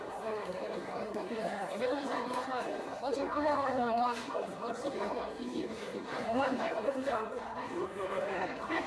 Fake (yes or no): yes